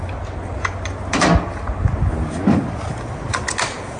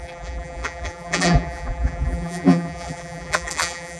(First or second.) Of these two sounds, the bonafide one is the first